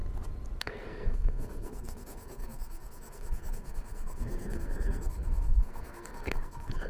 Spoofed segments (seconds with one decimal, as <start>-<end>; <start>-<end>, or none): 0.6-6.9